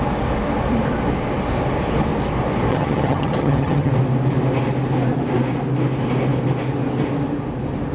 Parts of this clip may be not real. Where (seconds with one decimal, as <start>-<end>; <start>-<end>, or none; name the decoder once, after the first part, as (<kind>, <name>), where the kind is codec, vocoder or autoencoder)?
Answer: 2.7-3.9 (vocoder, HiFi-GAN)